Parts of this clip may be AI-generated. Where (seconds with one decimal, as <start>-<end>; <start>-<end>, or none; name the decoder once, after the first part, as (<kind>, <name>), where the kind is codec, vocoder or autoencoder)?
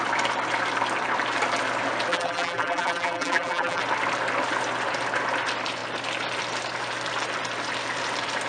2.1-3.8 (vocoder, BigVGAN v2)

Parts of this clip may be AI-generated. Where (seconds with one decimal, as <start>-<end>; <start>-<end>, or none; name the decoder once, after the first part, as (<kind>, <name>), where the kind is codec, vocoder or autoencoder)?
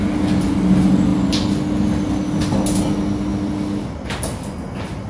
none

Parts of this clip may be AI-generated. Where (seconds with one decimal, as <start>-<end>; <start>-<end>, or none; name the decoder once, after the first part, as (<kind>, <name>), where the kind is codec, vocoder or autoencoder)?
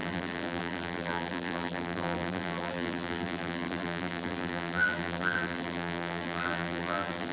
0.0-7.3 (vocoder, BigVGAN v2)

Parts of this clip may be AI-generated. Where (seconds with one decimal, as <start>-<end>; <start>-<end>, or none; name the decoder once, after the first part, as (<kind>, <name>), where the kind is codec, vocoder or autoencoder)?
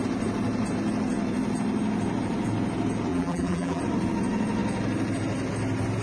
3.1-3.8 (vocoder, BigVGAN v2)